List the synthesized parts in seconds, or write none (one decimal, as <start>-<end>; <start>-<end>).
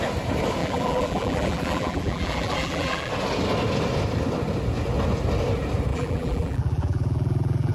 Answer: 0.6-3.1; 5.9-7.7